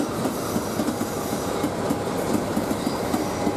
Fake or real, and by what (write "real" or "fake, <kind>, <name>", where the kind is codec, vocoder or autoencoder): real